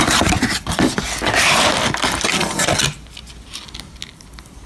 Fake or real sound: real